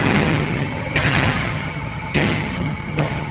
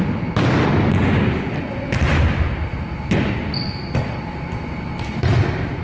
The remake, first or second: first